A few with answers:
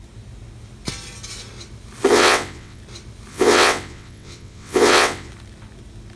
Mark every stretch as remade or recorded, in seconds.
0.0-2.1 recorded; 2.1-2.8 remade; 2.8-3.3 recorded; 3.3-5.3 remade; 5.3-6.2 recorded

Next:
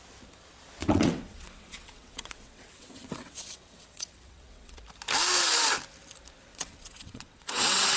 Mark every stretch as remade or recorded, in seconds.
0.0-0.8 recorded; 0.8-4.8 remade; 4.8-6.5 recorded; 6.5-8.0 remade

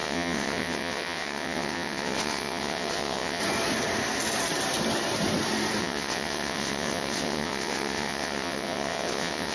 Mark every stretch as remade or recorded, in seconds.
0.0-3.4 remade; 3.4-5.8 recorded; 5.8-9.5 remade

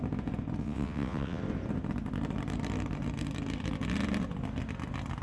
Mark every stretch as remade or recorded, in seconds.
0.0-0.6 recorded; 0.6-1.4 remade; 1.4-5.2 recorded